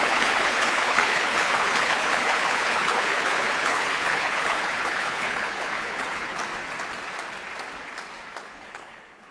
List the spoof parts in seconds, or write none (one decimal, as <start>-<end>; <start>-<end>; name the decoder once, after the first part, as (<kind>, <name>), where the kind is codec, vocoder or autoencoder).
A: 0.0-6.4 (codec, HILCodec); 8.4-9.3